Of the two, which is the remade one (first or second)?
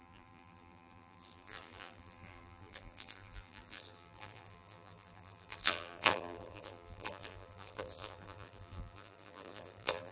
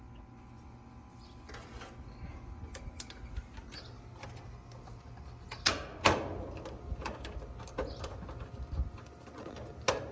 first